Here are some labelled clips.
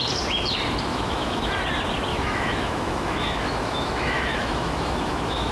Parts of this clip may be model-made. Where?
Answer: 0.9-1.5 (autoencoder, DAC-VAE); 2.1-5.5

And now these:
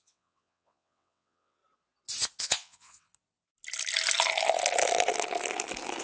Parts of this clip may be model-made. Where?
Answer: 0.0-1.6 (vocoder, WaveNeXt); 2.4-3.1

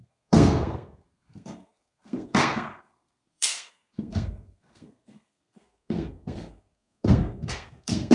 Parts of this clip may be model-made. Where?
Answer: 0.0-8.1 (codec, SNAC)

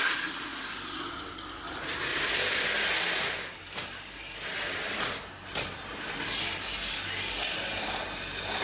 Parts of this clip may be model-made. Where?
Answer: none

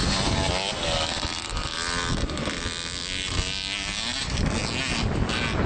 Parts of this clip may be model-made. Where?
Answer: none

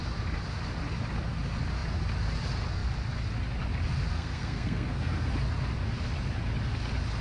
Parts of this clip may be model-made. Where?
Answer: 4.1-5.3 (codec, SNAC)